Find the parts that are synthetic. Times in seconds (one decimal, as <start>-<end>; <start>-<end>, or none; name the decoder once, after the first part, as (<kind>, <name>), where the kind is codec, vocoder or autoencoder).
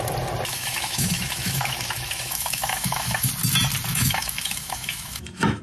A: 0.5-3.3 (autoencoder, DAC-VAE); 3.9-5.6